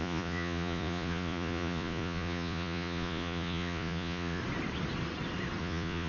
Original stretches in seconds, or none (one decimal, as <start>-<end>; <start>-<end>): 4.4-5.6